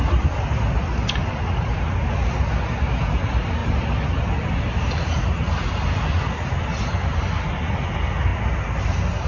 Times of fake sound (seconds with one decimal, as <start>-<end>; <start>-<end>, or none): none